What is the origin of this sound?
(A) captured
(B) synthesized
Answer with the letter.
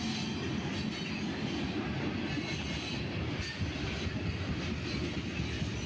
A